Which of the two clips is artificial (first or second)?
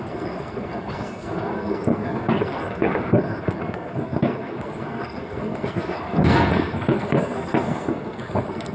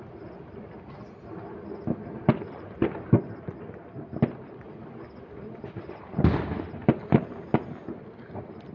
first